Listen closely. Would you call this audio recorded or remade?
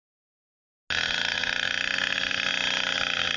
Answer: recorded